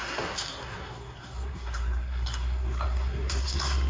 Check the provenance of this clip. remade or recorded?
remade